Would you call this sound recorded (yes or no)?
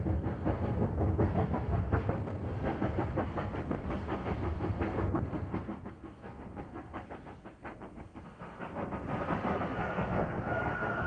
no